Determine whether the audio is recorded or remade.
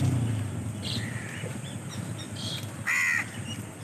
recorded